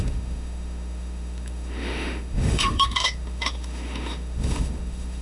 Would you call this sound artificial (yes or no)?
yes